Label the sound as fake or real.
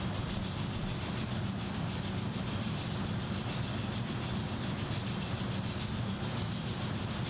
real